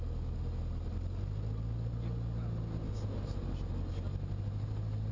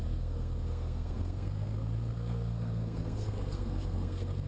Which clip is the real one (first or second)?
first